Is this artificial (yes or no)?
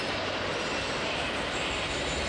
no